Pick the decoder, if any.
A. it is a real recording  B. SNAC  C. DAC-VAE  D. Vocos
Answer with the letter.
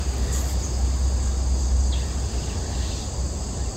A